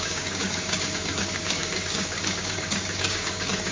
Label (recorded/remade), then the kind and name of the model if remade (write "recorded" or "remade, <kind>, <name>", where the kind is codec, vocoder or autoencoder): remade, codec, DAC